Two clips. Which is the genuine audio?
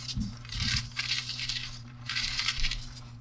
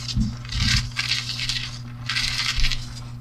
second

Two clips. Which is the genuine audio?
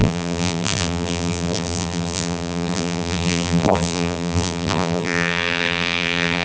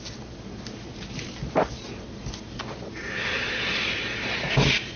second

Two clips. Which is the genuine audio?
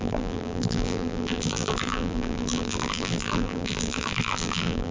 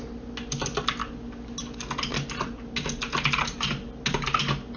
second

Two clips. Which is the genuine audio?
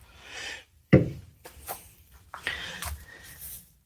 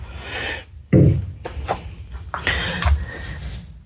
second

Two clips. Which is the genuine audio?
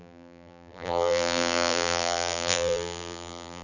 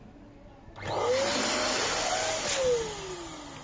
second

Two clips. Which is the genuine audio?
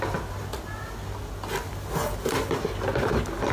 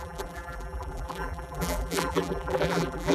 first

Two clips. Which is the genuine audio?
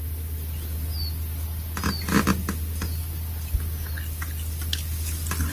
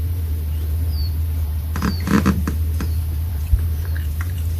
first